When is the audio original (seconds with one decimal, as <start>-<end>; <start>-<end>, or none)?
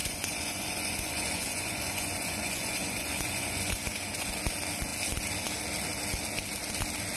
4.3-7.2